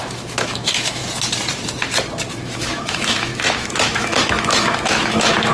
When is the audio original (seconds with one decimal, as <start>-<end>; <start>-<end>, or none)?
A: 1.0-2.3